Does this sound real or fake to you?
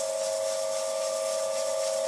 real